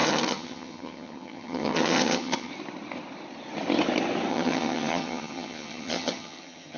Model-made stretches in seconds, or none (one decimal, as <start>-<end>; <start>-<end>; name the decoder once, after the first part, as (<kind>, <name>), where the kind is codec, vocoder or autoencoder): 0.0-2.5 (vocoder, HiFi-GAN); 4.3-6.8